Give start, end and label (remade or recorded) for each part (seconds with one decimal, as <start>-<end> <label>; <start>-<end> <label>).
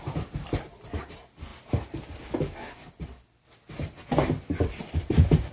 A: 0.0-1.5 remade; 1.5-4.8 recorded; 4.8-5.5 remade